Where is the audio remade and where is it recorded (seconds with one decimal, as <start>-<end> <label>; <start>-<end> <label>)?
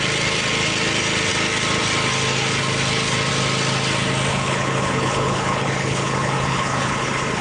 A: 0.0-4.3 recorded; 4.3-7.4 remade